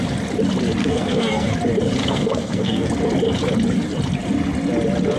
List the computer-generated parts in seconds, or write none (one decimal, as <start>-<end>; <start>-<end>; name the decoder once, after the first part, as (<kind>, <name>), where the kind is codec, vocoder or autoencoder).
0.8-1.5 (codec, SNAC); 2.0-2.9

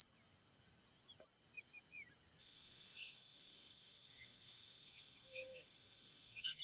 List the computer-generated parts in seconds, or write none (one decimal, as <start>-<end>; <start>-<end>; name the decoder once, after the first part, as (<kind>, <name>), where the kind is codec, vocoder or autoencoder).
2.4-6.6 (codec, SNAC)

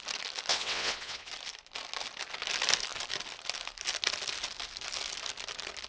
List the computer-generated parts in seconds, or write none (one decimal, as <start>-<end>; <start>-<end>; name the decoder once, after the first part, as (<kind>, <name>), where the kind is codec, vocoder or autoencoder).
0.5-1.3 (vocoder, WaveNeXt)

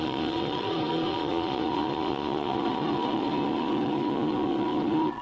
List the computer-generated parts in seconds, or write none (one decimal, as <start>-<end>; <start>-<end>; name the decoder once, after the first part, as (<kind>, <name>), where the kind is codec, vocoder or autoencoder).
0.0-5.2 (vocoder, Vocos)

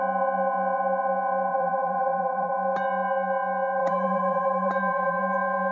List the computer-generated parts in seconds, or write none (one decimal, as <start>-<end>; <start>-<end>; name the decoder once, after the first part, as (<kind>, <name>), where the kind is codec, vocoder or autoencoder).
1.5-2.5 (vocoder, BigVGAN v2); 3.8-5.2

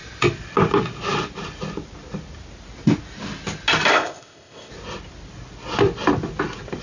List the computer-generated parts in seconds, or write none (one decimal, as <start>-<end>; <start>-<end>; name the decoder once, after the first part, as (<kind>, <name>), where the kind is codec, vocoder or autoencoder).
3.9-4.7 (codec, ZipCodec)

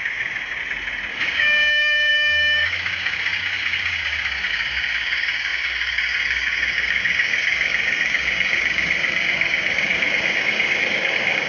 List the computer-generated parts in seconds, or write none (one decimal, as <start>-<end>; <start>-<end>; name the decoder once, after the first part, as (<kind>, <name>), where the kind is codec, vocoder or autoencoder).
0.0-0.6 (codec, DAC); 1.1-11.5